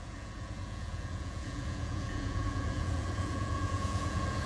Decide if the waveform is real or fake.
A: fake